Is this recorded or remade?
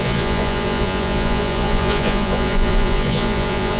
remade